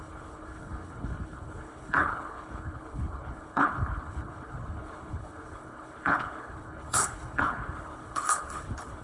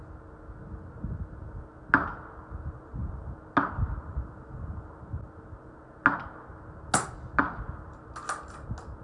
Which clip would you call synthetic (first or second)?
first